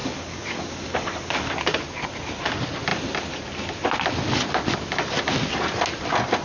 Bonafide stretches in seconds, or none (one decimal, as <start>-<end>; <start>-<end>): 1.5-6.4